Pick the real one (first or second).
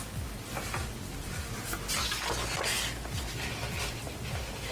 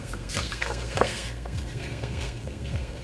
first